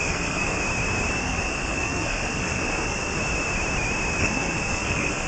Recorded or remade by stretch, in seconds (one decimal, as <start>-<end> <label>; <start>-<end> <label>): 0.0-0.6 remade; 0.6-1.2 recorded; 1.2-3.2 remade; 3.2-4.2 recorded; 4.2-5.3 remade